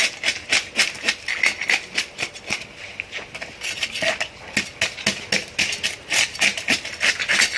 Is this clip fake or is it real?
real